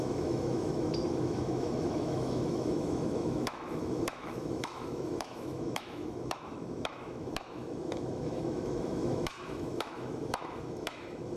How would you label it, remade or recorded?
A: remade